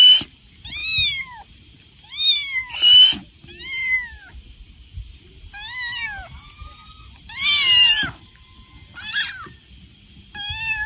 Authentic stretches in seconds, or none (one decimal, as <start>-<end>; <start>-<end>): 0.0-10.9